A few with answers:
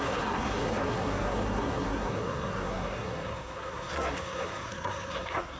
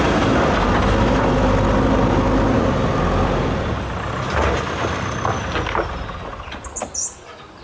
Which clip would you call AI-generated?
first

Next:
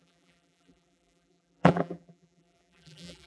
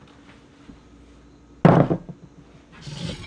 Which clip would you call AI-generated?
first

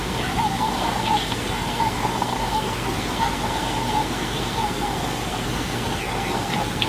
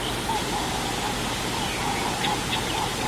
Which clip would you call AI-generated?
first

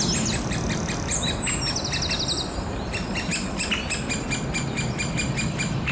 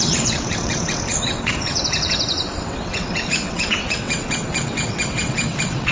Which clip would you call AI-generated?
second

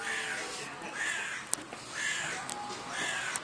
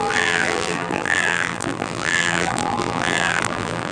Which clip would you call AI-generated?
second